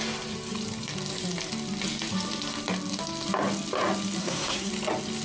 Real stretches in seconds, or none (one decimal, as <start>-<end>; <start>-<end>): 0.0-4.2; 4.7-5.2